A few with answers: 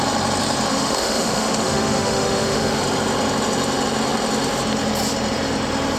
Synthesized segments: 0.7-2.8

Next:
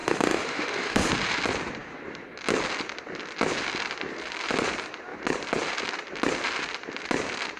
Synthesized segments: 0.0-1.1

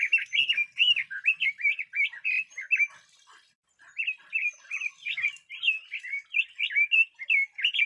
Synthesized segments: none

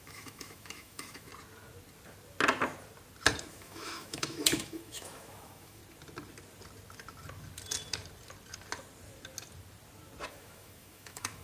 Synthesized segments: 0.0-1.3; 3.5-5.8; 10.3-11.4